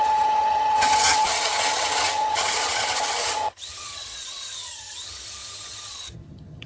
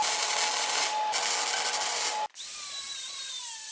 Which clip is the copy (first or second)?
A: first